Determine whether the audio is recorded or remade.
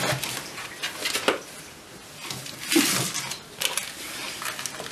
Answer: recorded